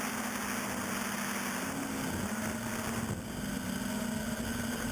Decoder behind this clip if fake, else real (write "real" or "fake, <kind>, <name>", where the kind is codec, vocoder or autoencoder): real